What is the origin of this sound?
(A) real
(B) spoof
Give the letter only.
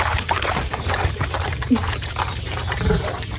B